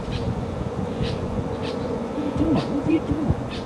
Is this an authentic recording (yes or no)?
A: no